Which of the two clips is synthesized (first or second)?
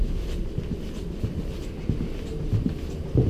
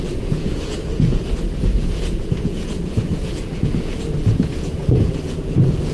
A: second